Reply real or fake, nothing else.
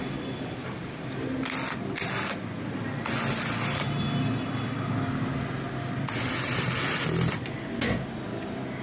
real